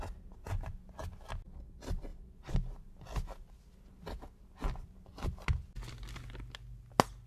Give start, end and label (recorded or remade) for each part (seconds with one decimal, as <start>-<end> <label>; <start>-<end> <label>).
0.0-7.3 recorded